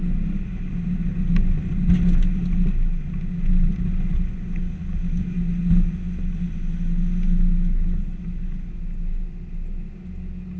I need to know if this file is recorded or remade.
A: recorded